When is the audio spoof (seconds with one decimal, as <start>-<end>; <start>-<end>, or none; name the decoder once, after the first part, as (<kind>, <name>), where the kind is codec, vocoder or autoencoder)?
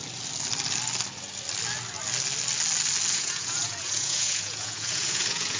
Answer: 3.1-5.6 (vocoder, Vocos)